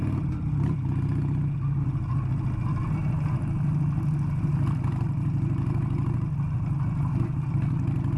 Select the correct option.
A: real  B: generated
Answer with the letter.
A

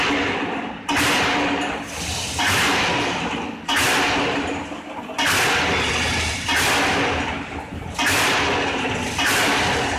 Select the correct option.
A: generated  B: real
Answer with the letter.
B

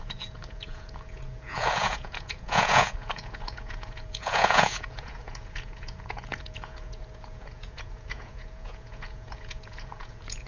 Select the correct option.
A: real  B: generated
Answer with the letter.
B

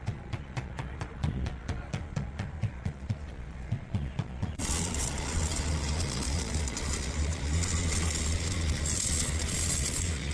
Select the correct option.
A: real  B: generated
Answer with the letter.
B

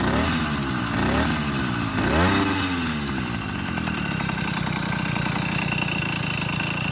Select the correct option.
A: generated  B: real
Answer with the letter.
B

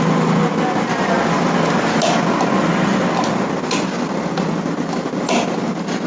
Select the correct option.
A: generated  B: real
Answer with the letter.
B